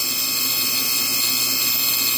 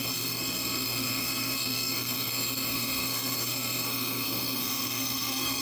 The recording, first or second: first